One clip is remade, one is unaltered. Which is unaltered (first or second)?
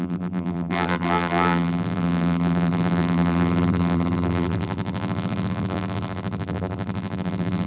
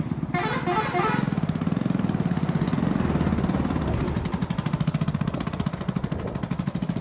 second